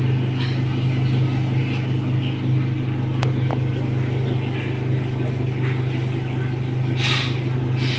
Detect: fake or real real